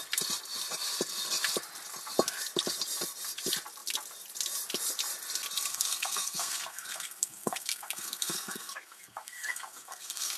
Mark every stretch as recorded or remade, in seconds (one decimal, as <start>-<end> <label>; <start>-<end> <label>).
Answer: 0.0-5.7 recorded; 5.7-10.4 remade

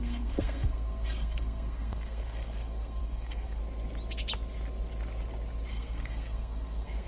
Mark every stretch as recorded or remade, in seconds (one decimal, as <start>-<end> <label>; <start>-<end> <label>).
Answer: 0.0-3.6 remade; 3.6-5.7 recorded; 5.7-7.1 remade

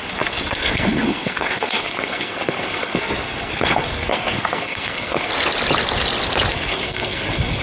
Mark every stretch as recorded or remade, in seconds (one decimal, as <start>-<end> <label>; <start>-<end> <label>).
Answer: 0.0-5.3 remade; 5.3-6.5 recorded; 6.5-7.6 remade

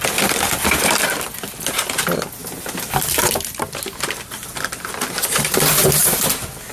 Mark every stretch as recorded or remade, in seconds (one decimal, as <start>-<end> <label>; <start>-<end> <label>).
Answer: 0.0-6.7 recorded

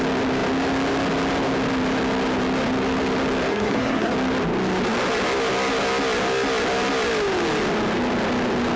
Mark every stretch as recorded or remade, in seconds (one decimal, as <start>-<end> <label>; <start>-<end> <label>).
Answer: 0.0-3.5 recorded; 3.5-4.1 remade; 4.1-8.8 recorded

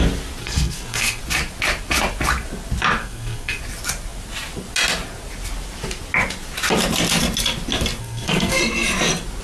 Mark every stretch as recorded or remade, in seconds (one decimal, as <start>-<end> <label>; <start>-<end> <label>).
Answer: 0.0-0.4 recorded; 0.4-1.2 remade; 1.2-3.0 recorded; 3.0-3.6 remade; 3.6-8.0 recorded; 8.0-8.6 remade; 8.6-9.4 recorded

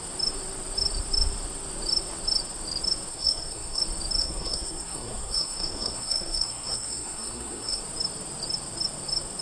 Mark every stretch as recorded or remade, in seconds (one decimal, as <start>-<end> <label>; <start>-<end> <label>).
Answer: 0.0-3.1 recorded; 3.1-3.8 remade; 3.8-4.2 recorded; 4.2-7.8 remade; 7.8-9.4 recorded

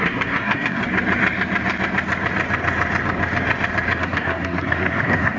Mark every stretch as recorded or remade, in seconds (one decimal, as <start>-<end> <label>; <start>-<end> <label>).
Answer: 0.0-0.8 remade; 0.8-4.0 recorded; 4.0-5.4 remade